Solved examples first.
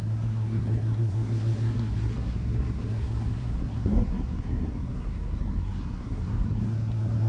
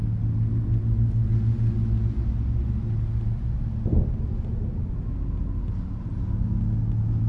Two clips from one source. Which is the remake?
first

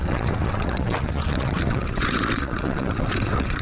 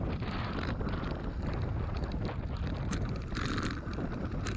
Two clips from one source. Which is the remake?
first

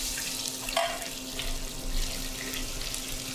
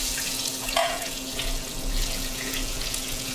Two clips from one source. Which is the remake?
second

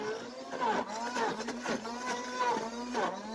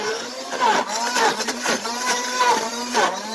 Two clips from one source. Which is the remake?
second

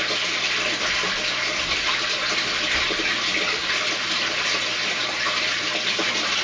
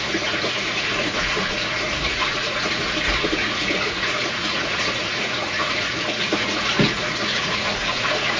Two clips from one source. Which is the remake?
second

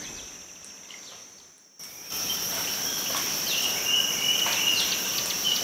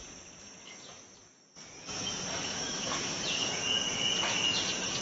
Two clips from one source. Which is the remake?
second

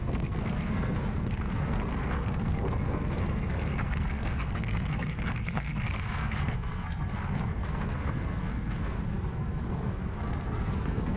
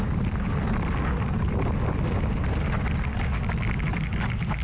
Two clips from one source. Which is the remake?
first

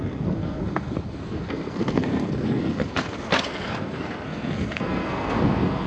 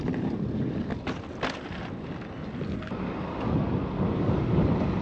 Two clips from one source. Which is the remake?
first